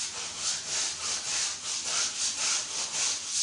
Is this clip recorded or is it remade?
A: recorded